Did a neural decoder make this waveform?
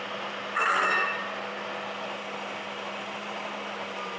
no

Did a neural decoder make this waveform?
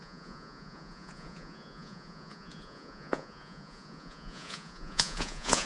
yes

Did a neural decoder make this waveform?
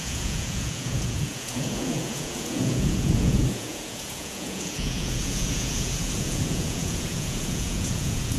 yes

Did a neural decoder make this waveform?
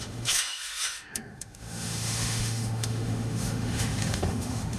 yes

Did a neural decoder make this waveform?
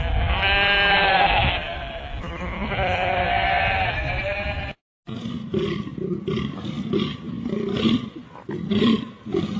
no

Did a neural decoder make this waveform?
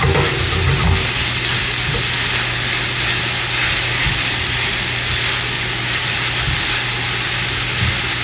no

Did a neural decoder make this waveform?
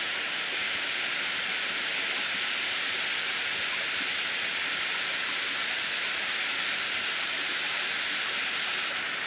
no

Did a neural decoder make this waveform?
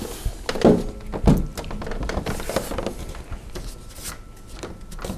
no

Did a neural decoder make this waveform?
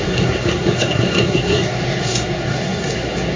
yes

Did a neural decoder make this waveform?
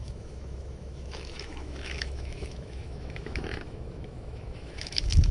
yes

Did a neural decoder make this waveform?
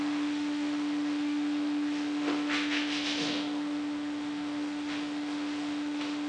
yes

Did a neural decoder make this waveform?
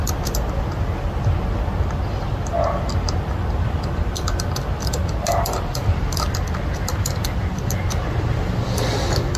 no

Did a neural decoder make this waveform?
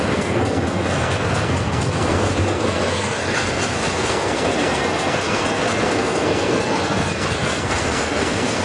yes